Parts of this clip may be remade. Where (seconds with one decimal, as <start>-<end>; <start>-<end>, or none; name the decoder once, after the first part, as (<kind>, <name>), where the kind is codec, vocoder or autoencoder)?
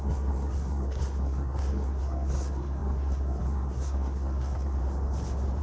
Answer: 0.0-4.8 (codec, SNAC)